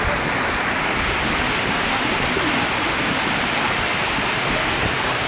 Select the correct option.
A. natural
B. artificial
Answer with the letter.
A